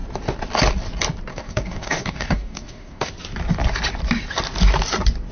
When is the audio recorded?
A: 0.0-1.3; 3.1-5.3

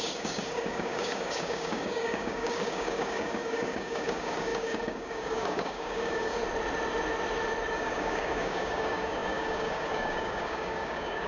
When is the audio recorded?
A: 6.4-7.7

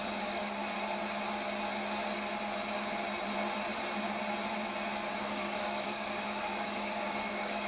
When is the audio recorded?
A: 0.6-5.2

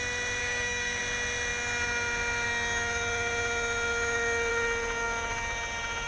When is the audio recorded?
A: 0.0-0.4; 1.0-6.1

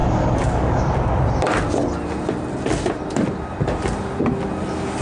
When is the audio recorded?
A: 0.8-5.0

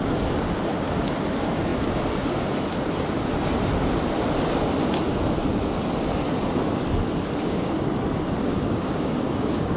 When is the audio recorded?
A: 0.0-7.4; 8.0-8.4